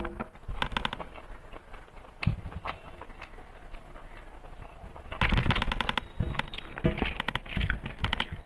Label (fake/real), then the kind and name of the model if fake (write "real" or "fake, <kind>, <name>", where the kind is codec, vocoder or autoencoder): real